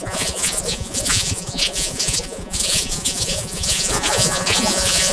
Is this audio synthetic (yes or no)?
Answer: yes